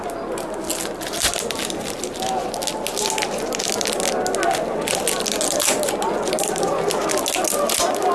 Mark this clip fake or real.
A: real